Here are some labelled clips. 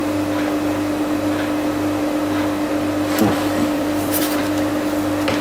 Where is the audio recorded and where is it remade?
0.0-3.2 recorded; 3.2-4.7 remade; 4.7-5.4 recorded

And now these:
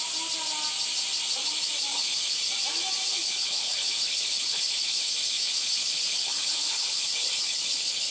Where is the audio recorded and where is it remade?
0.0-1.9 recorded; 1.9-2.4 remade; 2.4-3.1 recorded; 3.1-8.1 remade